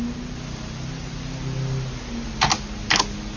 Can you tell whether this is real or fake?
real